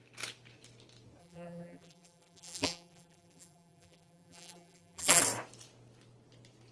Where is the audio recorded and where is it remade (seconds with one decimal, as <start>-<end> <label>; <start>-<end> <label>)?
0.0-1.2 recorded; 1.2-5.2 remade; 5.2-6.7 recorded